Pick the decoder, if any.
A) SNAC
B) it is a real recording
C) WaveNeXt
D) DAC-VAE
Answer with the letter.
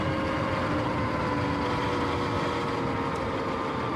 B